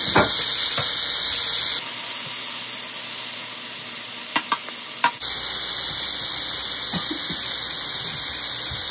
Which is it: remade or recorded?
recorded